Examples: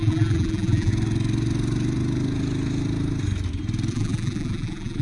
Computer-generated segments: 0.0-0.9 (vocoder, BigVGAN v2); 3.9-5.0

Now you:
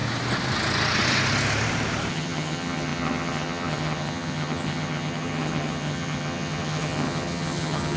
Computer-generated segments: 2.1-8.0 (vocoder, HiFi-GAN)